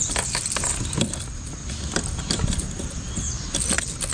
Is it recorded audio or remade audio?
recorded